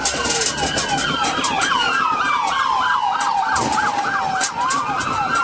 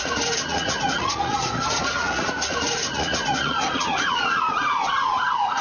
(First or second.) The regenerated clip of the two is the second